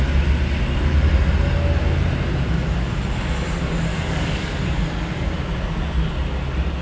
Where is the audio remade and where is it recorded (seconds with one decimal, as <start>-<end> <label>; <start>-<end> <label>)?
0.0-3.9 recorded; 3.9-4.5 remade; 4.5-6.8 recorded

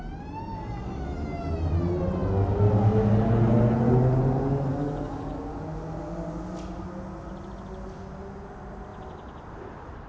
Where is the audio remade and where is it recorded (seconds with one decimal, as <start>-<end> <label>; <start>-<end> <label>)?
0.0-4.7 recorded; 4.7-5.5 remade; 5.5-10.1 recorded

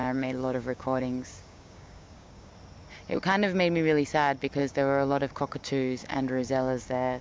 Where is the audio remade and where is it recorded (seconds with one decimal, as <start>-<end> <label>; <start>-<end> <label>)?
0.0-2.5 remade; 2.5-4.6 recorded; 4.6-7.2 remade